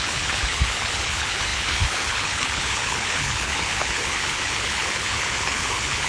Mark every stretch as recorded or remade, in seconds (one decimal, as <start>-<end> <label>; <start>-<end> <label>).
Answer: 0.0-6.1 remade